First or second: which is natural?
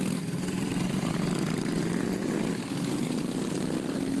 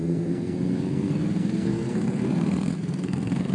first